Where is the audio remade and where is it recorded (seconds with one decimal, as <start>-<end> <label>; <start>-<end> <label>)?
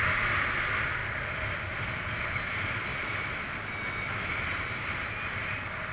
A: 0.0-1.0 recorded; 1.0-2.0 remade; 2.0-2.9 recorded; 2.9-3.8 remade; 3.8-5.9 recorded